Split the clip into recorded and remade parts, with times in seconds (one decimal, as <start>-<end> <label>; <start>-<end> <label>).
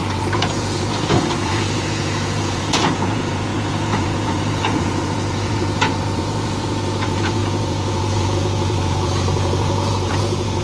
0.0-10.6 remade